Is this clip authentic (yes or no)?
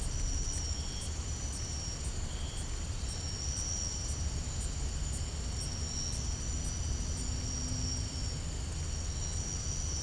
yes